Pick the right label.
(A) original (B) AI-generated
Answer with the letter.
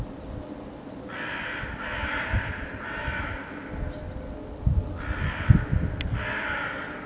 A